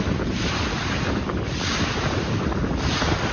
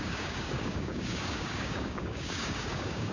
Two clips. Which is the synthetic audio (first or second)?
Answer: second